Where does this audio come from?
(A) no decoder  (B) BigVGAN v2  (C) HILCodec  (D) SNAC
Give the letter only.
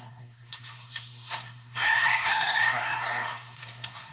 D